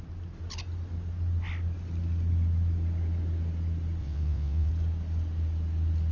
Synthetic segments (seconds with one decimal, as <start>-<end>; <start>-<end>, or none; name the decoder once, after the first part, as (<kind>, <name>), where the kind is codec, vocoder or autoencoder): 4.0-4.7 (vocoder, WaveNeXt)